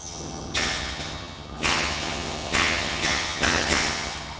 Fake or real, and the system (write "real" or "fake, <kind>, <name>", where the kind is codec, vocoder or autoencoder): fake, vocoder, HiFi-GAN